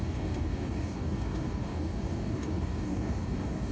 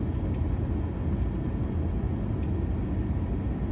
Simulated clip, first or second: first